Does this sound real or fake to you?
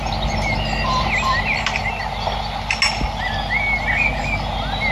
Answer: real